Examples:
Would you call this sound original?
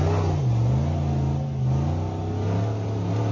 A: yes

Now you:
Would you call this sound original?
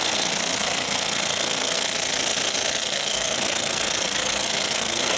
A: no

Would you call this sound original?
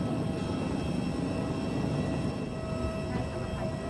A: yes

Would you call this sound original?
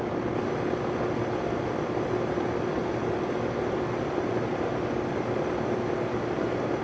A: yes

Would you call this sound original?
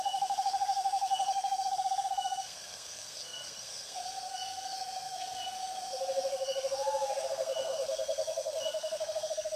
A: no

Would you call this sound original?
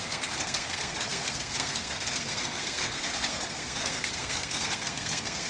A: no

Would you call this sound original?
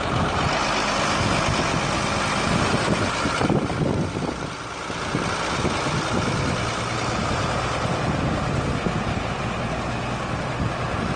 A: yes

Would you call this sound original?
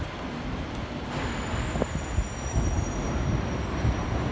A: yes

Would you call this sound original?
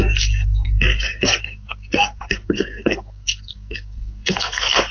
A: no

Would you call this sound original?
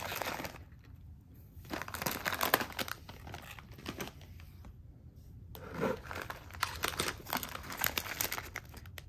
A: yes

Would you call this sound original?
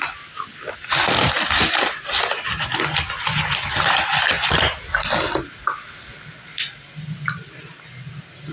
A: yes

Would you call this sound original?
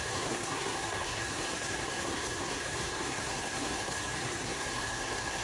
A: no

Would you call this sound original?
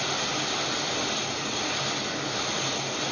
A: yes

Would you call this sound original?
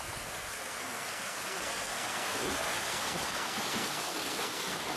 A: no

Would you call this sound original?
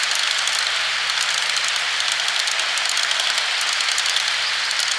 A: yes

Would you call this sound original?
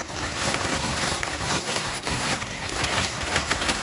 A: no